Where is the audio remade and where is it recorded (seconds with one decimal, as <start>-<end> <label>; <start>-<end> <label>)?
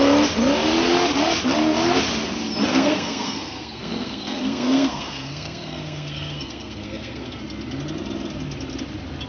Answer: 0.0-2.7 recorded; 2.7-7.4 remade; 7.4-9.3 recorded